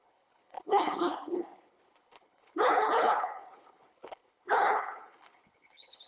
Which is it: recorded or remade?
remade